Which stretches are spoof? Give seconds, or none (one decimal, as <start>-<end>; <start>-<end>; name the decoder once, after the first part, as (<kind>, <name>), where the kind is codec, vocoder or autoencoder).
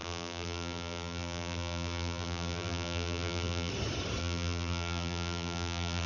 0.0-3.7 (vocoder, BigVGAN v2); 4.2-6.1